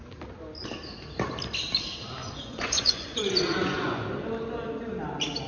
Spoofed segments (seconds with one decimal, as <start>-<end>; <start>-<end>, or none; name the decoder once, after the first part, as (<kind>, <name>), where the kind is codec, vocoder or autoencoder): 2.2-4.0 (vocoder, Vocos)